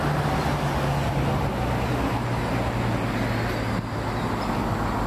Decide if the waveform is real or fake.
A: real